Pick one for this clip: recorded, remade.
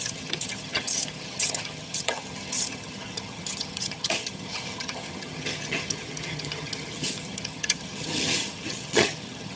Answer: remade